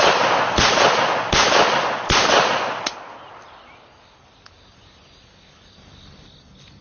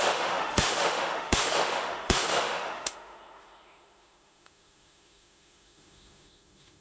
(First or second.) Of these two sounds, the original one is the first